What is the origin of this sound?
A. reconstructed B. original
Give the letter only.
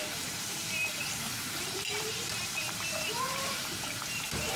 A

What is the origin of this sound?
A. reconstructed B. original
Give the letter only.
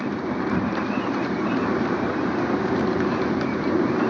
A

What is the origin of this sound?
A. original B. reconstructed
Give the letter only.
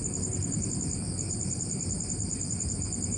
B